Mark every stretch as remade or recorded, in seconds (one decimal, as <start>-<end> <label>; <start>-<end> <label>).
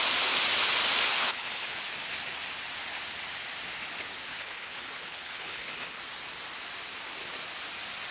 0.0-1.1 recorded; 1.1-1.8 remade; 1.8-4.3 recorded; 4.3-6.0 remade; 6.0-8.1 recorded